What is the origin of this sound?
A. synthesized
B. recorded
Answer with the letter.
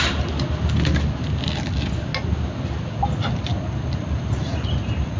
B